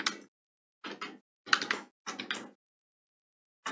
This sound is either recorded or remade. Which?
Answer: recorded